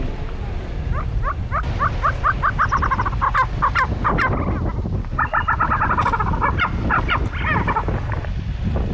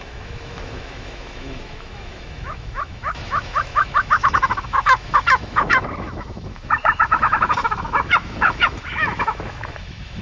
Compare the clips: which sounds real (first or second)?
first